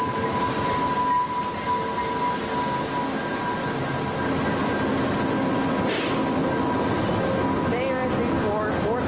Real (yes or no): yes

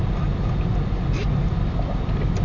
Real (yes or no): yes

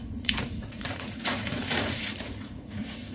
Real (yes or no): no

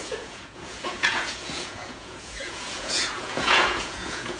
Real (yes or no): no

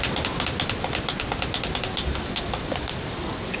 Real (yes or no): yes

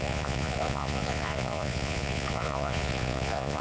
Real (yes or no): no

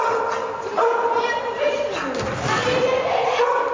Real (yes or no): yes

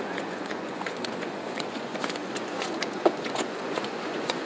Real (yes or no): no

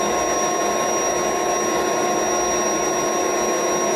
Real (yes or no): yes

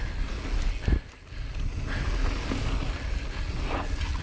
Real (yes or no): yes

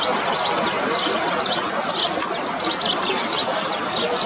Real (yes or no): yes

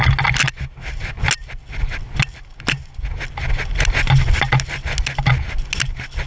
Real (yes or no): yes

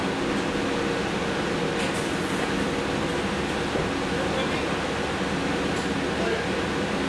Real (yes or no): yes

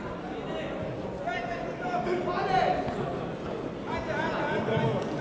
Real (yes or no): yes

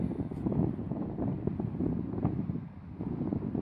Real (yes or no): yes